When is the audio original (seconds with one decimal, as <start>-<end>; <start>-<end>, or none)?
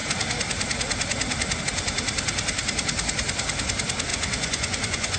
0.0-4.1